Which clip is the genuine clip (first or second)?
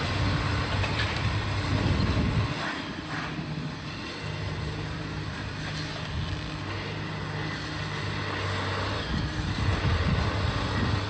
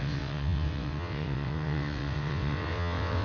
first